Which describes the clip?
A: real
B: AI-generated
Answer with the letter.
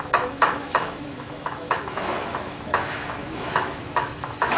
B